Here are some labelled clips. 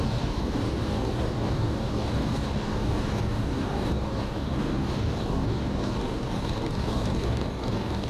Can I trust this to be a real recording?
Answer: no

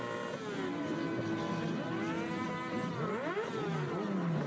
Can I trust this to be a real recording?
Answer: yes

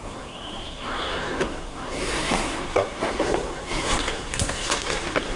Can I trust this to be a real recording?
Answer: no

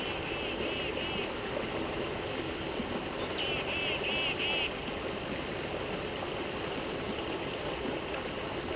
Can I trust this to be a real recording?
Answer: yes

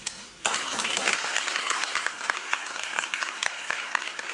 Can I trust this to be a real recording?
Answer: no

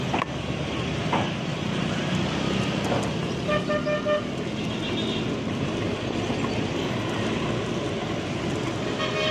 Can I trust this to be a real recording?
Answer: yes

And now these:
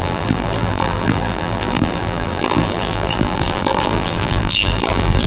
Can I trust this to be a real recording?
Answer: no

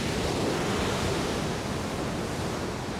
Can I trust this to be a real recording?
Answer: no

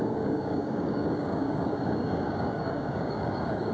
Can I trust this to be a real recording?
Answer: no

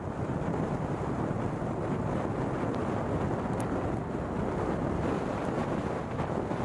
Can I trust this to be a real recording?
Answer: yes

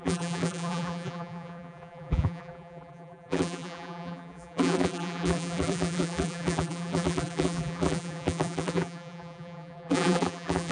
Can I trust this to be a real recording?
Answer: no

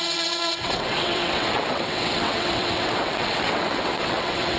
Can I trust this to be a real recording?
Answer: no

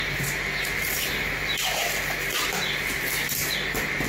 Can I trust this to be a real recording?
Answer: yes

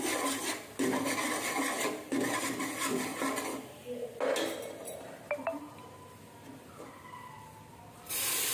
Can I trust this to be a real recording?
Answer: yes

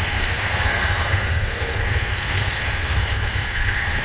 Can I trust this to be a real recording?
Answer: no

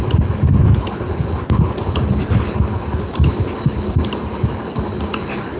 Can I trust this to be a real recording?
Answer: yes